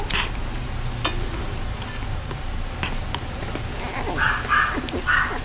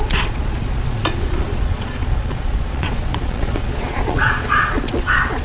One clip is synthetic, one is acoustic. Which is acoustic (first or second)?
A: first